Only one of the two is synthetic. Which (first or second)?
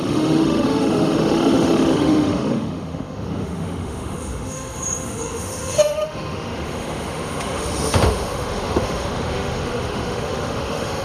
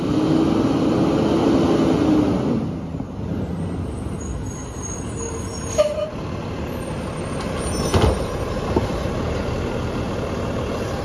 first